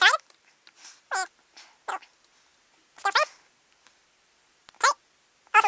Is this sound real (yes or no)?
yes